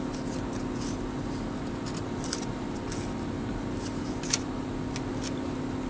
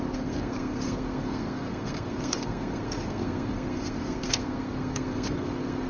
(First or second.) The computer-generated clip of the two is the second